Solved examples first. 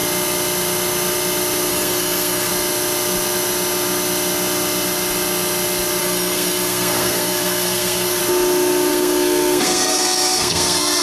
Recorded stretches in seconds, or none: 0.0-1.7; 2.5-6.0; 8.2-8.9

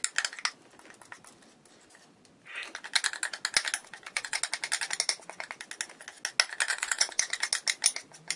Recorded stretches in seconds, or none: 0.0-3.8; 4.4-6.7; 7.4-8.4

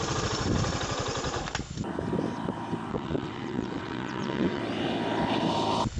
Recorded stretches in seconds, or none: 0.0-2.9; 4.6-6.0

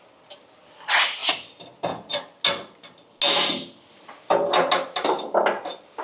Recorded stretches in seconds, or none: 0.0-6.0